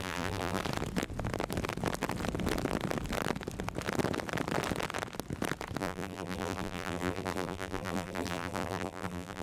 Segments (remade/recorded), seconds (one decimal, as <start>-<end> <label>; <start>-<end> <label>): 0.0-0.6 remade; 0.6-5.8 recorded; 5.8-9.4 remade